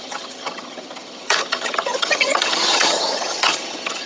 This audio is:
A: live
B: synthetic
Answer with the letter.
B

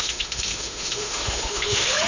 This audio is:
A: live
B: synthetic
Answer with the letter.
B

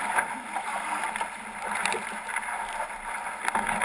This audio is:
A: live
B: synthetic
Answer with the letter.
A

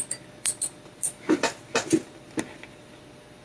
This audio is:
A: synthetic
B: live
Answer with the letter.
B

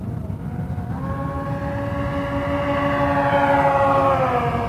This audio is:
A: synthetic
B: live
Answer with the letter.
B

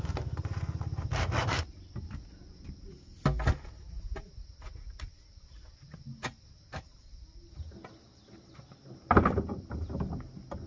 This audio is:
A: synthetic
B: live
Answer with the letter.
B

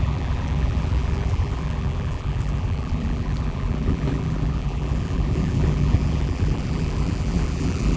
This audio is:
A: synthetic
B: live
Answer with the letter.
A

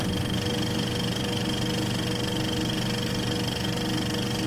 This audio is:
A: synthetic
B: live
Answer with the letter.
B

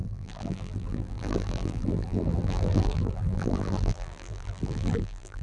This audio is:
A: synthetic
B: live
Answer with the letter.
A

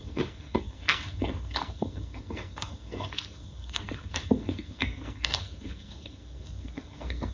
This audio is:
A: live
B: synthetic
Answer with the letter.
B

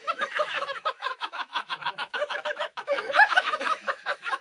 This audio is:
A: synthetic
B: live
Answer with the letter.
A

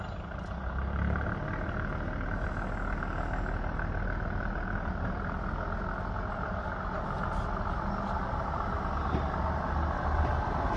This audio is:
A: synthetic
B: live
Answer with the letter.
B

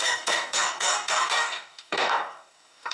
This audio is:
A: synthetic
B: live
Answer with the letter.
A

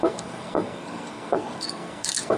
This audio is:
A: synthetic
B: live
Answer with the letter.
A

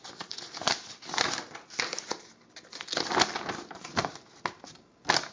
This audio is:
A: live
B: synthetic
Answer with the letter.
A